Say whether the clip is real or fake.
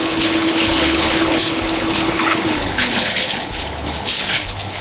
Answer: fake